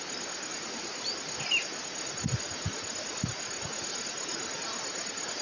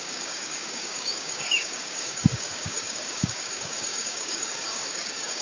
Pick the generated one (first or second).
second